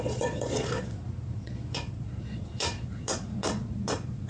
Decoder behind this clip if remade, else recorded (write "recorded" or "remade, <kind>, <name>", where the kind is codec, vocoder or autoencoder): remade, vocoder, Vocos